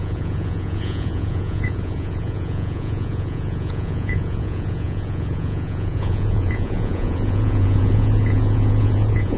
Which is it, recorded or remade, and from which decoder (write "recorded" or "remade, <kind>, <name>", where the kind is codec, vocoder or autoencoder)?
remade, vocoder, Vocos